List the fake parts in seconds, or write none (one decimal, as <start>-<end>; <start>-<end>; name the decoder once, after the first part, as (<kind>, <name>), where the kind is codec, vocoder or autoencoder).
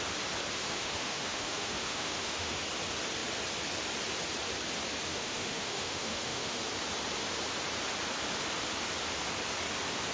0.6-2.6 (autoencoder, DAC-VAE); 5.1-6.6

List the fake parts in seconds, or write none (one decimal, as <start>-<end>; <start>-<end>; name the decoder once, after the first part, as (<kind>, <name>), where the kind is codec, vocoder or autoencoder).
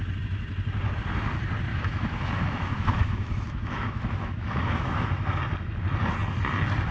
1.7-5.3 (autoencoder, DAC-VAE)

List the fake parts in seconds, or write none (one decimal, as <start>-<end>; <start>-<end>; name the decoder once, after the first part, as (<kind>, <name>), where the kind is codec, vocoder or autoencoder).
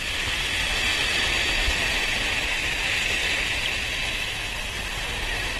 4.0-4.5 (autoencoder, DAC-VAE)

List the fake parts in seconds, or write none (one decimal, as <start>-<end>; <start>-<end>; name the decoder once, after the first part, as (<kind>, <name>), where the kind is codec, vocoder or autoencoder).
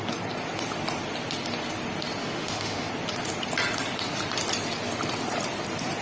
2.2-2.9 (autoencoder, DAC-VAE)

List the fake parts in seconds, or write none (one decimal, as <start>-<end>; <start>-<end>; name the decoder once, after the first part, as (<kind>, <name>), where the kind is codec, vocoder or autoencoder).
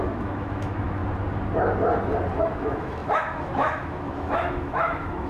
0.0-1.0 (autoencoder, DAC-VAE); 2.4-5.3